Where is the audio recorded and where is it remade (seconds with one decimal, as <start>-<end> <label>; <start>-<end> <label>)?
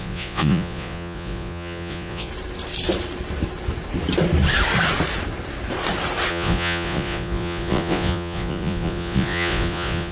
0.0-2.3 remade; 2.3-6.3 recorded; 6.3-10.1 remade